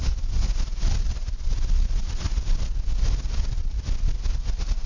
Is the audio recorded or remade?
recorded